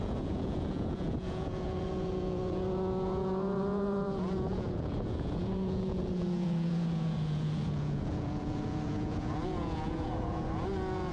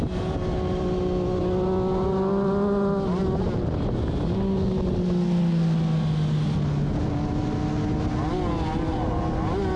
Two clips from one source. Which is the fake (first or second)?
first